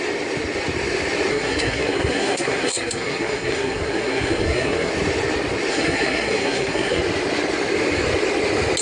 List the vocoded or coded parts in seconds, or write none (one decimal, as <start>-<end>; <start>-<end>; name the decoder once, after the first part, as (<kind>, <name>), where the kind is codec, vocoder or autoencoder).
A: 1.3-4.9 (codec, SNAC); 5.7-7.0